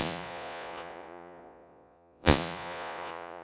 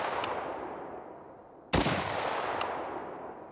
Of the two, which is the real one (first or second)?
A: second